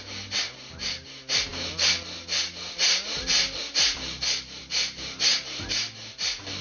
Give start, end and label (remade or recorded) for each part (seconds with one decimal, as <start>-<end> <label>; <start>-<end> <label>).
0.0-6.6 recorded